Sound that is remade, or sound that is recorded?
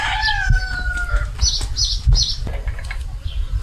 recorded